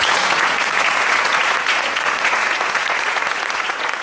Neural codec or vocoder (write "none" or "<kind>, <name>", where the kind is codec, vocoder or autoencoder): vocoder, Vocos